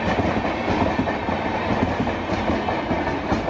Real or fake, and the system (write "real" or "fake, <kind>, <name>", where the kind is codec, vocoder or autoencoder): real